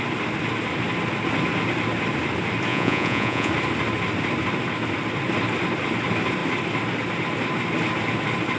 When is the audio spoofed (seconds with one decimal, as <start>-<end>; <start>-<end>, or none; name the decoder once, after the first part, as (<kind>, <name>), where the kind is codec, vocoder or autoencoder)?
2.7-3.5 (vocoder, Vocos)